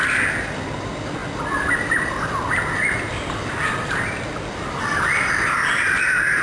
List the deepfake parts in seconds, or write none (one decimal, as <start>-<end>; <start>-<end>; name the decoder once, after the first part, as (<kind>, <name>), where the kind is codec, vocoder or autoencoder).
none